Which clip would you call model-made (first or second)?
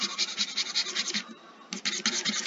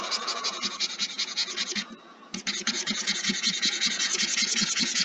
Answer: second